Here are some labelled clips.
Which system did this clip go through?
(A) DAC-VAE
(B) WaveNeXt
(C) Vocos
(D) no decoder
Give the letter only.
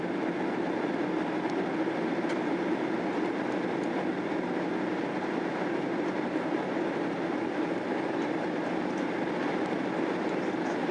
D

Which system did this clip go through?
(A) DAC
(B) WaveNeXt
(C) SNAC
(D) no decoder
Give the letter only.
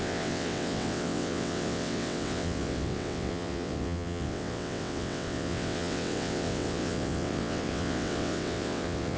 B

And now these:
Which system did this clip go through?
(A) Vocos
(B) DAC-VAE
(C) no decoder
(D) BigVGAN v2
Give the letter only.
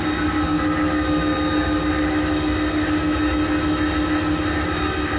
C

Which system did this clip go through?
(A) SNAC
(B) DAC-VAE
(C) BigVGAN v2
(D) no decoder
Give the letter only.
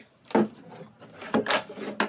D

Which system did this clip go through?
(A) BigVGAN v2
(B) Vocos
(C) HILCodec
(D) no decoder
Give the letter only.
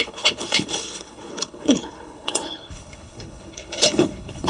C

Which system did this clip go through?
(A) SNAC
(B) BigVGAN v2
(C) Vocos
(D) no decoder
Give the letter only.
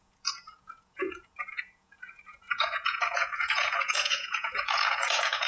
C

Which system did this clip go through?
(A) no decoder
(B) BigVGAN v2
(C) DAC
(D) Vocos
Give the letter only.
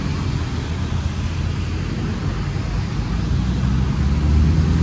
A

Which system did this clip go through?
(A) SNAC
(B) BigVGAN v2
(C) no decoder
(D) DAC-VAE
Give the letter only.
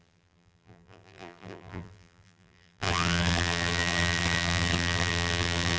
B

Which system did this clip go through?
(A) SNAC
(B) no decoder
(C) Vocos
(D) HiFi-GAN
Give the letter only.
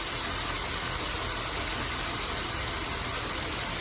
B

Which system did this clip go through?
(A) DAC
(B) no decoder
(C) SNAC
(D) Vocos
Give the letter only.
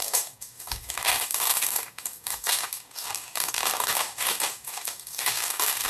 A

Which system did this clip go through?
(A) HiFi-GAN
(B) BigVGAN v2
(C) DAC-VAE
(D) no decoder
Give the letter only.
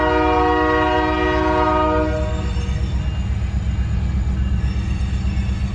D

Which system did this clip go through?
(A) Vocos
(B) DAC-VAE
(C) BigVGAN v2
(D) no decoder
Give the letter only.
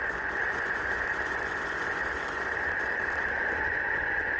A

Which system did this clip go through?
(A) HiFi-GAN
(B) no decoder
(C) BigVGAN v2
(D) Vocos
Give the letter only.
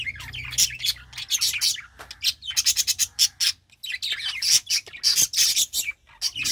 B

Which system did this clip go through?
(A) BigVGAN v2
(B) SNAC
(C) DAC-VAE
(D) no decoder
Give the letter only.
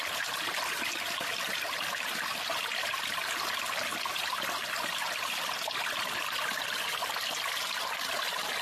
D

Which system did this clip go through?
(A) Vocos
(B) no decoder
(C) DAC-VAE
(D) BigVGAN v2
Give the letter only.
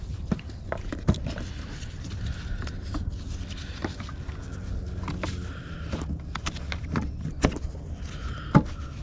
B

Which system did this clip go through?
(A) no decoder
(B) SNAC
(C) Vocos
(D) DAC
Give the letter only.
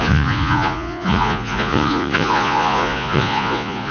C